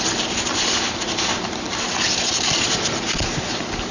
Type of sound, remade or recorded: recorded